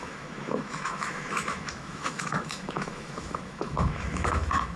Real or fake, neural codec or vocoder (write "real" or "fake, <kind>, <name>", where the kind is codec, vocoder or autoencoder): fake, autoencoder, DAC-VAE